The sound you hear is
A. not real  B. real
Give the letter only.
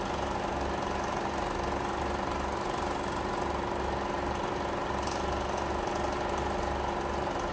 B